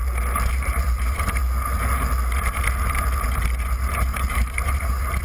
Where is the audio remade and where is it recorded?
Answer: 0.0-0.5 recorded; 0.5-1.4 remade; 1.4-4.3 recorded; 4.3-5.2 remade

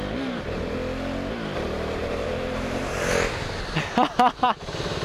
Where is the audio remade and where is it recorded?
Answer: 0.0-2.0 recorded; 2.0-2.8 remade; 2.8-5.0 recorded

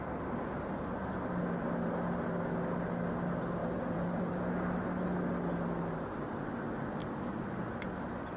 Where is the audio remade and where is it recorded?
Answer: 0.0-3.6 recorded; 3.6-4.5 remade; 4.5-7.0 recorded; 7.0-7.8 remade; 7.8-8.4 recorded

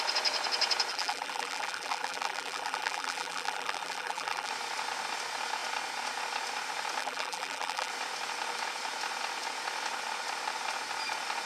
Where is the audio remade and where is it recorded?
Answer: 0.0-0.9 recorded; 0.9-4.5 remade; 4.5-7.0 recorded; 7.0-7.9 remade; 7.9-11.5 recorded